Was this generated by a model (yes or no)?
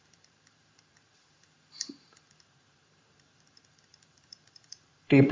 yes